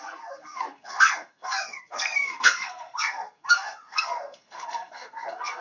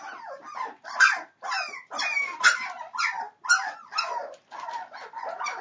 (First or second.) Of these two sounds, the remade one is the first